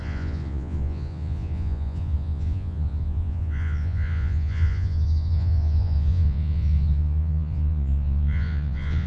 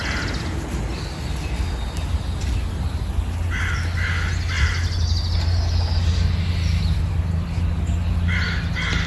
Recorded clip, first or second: second